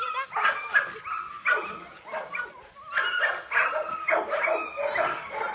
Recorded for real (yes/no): yes